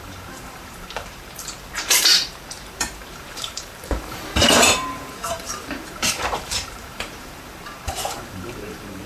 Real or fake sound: fake